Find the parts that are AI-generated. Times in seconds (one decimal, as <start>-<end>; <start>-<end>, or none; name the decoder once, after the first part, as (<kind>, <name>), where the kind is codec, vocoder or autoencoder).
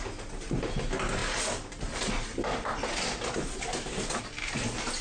none